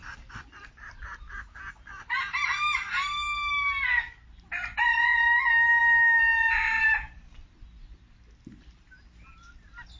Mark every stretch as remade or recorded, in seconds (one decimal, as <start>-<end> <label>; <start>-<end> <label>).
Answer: 0.0-10.0 recorded